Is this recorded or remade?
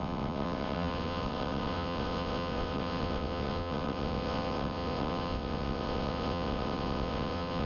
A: remade